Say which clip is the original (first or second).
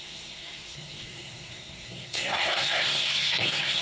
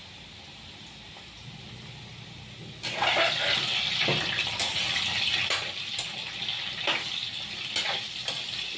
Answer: second